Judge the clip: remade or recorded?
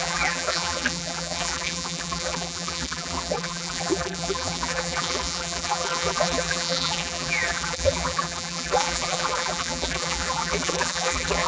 remade